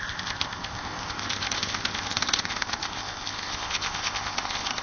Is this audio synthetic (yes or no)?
yes